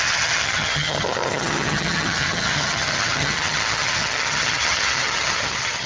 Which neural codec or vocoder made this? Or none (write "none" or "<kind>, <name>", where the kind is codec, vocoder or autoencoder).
vocoder, HiFi-GAN